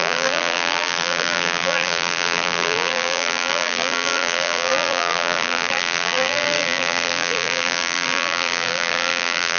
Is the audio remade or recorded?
remade